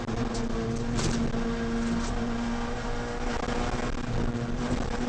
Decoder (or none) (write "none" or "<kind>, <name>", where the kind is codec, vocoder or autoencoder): none